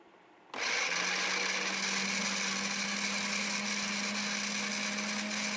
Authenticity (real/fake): real